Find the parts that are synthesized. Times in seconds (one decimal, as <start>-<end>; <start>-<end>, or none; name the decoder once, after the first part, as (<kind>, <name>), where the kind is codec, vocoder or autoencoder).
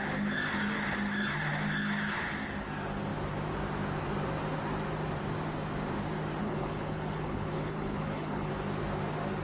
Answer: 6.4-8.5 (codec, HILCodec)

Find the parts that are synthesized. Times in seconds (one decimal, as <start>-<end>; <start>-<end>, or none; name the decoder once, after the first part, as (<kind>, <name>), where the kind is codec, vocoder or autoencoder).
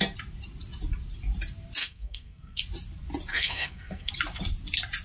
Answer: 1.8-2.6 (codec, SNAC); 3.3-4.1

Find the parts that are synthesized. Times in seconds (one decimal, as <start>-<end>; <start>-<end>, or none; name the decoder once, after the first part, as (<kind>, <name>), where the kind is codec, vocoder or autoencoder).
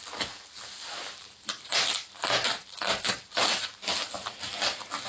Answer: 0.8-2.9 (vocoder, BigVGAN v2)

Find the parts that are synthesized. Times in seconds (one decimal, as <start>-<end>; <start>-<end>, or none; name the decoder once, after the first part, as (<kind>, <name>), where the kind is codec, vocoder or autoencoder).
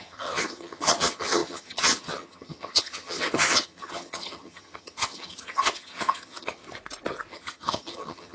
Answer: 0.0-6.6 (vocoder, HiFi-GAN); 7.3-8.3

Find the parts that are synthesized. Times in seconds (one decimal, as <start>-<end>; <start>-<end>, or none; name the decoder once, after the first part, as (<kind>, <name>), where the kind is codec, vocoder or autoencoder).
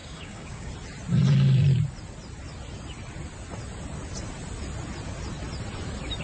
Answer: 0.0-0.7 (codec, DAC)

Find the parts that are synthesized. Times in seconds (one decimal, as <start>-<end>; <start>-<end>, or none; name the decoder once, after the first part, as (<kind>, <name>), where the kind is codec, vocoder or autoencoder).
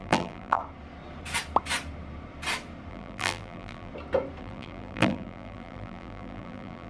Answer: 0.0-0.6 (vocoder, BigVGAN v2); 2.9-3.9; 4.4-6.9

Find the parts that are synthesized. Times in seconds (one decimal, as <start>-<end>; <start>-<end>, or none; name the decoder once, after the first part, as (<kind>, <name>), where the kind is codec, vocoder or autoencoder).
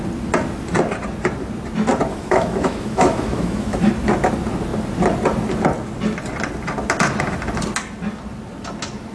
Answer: 2.1-3.9 (autoencoder, DAC-VAE)